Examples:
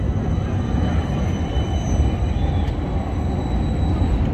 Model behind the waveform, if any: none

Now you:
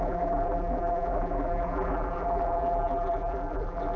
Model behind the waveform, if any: vocoder, BigVGAN v2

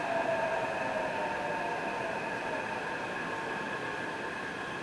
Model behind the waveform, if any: none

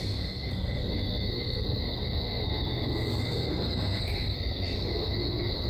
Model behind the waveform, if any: codec, SNAC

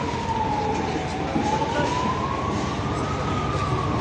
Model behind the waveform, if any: none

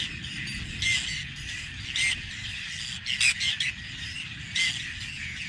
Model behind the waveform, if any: none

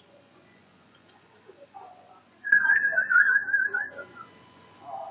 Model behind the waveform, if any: vocoder, Vocos